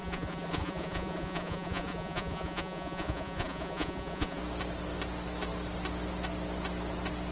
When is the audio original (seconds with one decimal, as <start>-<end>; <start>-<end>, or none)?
4.4-7.3